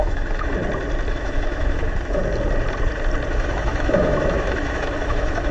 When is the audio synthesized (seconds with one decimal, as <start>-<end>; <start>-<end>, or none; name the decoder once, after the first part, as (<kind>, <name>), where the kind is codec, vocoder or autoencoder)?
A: 0.0-0.6 (autoencoder, DAC-VAE); 1.1-2.2; 3.3-5.5